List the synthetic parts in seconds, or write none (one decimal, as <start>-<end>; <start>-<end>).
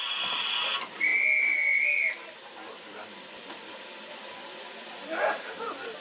none